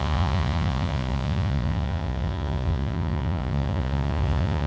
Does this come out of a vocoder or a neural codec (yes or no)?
yes